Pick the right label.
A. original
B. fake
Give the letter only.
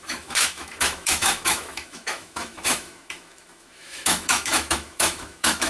B